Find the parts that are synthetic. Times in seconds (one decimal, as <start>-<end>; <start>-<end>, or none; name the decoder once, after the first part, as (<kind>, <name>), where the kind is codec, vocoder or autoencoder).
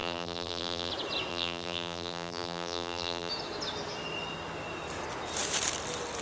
0.0-0.9 (vocoder, BigVGAN v2); 1.3-3.3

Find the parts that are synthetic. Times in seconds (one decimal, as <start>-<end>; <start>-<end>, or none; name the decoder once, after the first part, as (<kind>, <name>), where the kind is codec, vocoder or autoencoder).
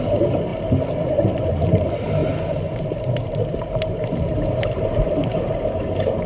0.0-6.3 (vocoder, BigVGAN v2)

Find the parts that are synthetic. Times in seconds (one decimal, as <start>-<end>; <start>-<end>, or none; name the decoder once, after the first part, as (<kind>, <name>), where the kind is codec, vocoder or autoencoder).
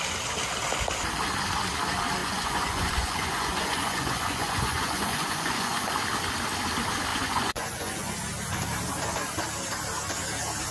2.2-5.9 (vocoder, Vocos); 7.1-8.1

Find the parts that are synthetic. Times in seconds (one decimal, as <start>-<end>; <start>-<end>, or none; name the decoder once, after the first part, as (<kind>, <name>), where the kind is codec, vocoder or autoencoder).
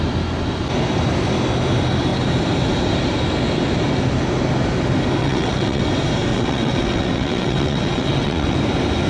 5.2-5.8 (vocoder, WaveNeXt); 6.3-8.6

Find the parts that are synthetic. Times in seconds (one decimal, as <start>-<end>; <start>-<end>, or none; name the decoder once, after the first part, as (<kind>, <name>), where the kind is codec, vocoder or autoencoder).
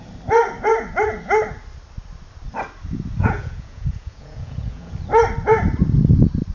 3.2-4.9 (vocoder, Vocos)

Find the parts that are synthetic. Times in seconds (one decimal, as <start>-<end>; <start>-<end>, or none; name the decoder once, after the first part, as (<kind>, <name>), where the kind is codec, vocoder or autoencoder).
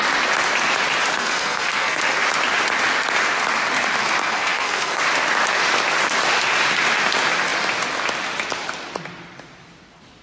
1.1-2.0 (codec, SNAC); 4.2-5.0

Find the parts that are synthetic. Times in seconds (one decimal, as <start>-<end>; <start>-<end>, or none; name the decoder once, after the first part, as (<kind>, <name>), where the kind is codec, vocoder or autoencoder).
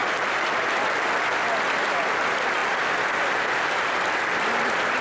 2.6-5.0 (vocoder, BigVGAN v2)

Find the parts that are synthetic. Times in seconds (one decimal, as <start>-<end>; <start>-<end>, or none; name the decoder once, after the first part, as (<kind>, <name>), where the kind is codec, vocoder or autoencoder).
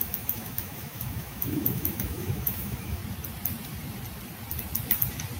0.0-3.0 (autoencoder, DAC-VAE)